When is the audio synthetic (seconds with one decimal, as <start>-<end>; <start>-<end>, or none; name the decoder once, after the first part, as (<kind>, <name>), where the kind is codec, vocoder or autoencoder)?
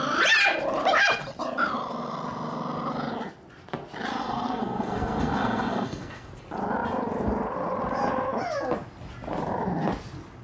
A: 4.2-6.3 (codec, SNAC)